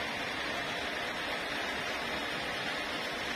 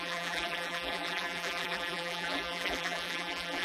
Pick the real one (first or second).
first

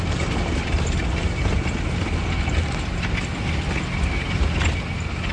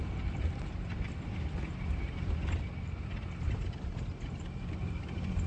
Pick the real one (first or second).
first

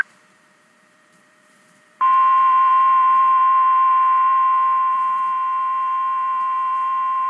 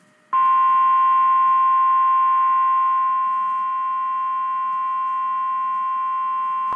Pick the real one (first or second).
second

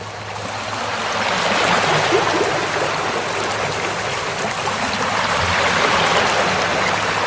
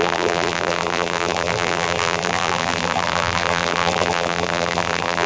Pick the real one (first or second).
first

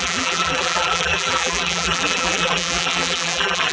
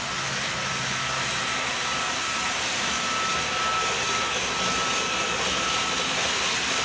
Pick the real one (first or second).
second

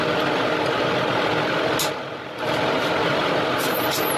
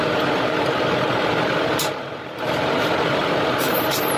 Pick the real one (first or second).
first